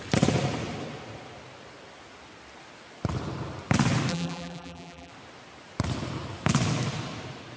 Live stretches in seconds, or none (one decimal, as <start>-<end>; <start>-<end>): 0.0-4.1; 5.1-7.6